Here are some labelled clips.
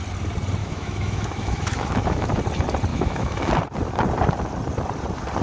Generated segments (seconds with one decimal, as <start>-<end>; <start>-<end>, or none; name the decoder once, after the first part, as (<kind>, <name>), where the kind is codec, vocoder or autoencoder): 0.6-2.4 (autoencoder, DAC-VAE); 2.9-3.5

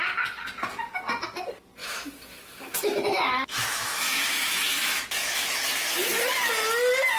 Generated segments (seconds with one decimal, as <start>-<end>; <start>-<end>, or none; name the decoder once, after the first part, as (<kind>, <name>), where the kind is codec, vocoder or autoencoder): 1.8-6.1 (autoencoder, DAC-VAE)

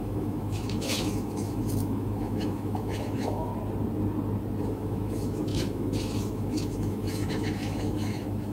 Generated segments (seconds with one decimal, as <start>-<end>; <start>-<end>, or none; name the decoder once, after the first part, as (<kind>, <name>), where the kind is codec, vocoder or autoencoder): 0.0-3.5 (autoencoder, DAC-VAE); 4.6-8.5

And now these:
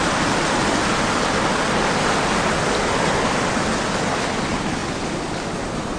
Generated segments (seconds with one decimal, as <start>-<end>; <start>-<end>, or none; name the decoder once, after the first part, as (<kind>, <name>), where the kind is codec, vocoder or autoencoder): none

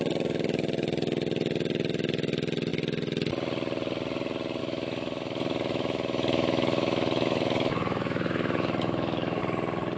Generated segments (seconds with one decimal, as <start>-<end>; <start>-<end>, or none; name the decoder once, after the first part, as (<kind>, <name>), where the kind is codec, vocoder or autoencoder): 4.6-9.4 (autoencoder, DAC-VAE)